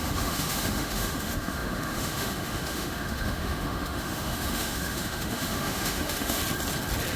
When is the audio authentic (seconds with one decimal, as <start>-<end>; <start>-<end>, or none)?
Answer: 6.4-7.2